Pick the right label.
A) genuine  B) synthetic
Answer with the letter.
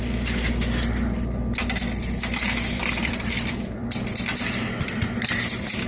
A